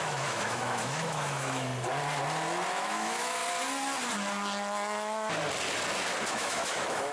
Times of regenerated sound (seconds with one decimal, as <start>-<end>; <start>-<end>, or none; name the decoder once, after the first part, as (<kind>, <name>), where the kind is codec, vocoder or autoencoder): 0.0-1.7 (autoencoder, DAC-VAE); 2.7-3.4; 6.3-7.1

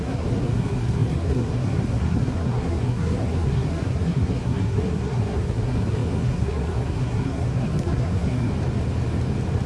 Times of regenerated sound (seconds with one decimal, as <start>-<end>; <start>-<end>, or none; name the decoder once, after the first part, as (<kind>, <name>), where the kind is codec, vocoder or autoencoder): 0.0-8.5 (codec, SNAC)

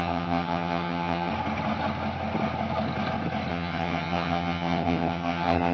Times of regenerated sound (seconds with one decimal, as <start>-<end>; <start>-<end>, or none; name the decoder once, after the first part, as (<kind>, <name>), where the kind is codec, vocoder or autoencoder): 0.0-1.3 (vocoder, HiFi-GAN); 3.5-5.7

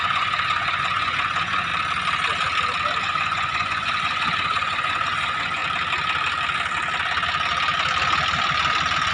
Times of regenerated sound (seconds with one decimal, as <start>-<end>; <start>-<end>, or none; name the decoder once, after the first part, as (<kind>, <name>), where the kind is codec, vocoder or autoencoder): 0.0-1.7 (vocoder, Vocos); 3.0-5.6